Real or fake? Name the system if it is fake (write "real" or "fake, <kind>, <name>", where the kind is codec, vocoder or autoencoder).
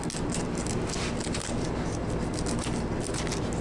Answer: real